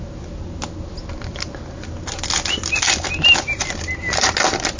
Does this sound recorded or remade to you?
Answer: recorded